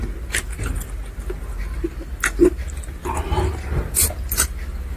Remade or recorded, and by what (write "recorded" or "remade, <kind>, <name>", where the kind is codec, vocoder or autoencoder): recorded